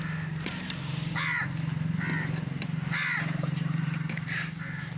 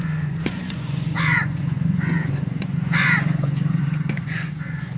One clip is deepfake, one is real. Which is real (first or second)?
first